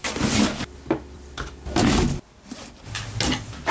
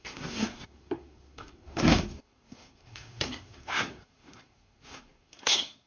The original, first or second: first